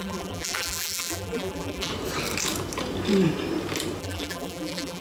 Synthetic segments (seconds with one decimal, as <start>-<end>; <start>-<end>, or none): 0.0-1.9; 4.0-5.0